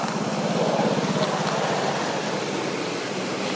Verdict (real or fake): real